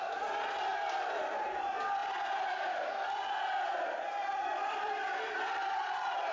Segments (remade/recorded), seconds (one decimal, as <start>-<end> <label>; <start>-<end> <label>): 0.0-6.3 remade